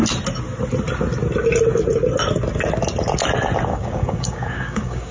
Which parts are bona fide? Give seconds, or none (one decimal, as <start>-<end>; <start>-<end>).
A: 0.0-3.7